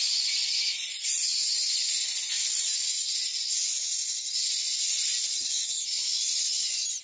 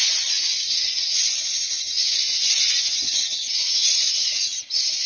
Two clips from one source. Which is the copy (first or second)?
second